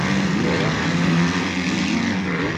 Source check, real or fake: fake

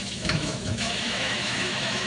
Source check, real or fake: fake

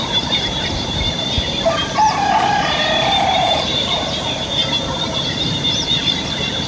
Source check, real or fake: fake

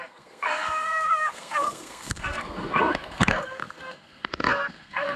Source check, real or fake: fake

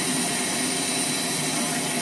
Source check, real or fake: real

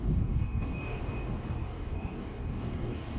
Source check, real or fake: fake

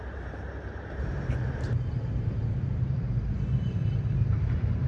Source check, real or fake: fake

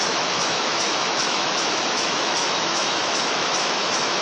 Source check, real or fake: fake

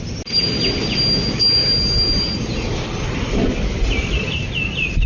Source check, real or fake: real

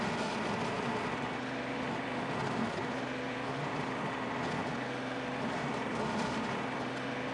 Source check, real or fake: real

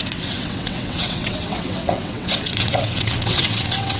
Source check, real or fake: fake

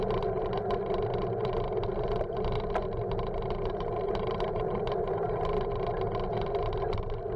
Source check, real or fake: real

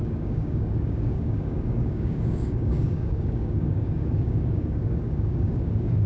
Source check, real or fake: fake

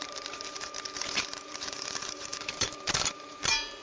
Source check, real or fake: fake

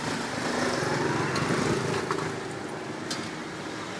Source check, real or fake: real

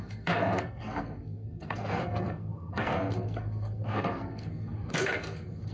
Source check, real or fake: fake